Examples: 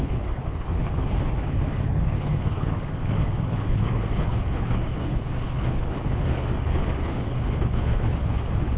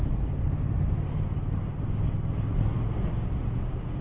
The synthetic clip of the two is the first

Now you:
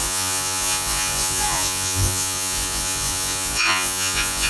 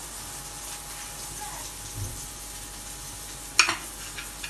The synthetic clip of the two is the first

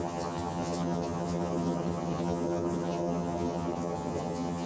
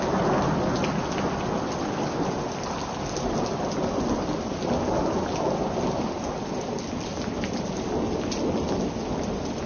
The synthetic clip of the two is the first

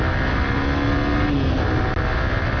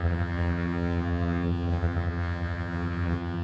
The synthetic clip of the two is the second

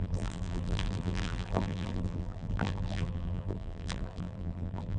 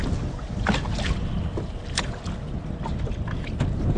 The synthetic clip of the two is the first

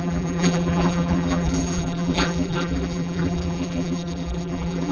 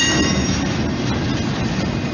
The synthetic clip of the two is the first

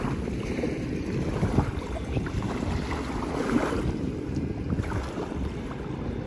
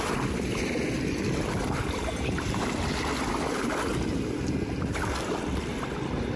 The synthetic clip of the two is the first